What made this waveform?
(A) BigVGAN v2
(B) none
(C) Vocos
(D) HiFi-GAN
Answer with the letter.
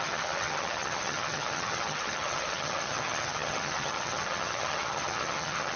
D